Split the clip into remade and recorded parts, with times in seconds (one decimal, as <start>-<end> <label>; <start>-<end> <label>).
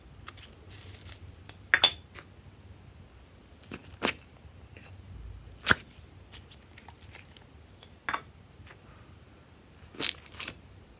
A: 0.0-11.0 recorded